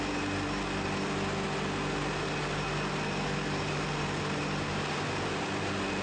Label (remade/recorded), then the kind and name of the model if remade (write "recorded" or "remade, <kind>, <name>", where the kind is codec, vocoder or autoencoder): recorded